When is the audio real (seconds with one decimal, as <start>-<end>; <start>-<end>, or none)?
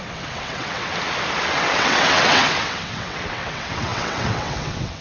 0.9-1.5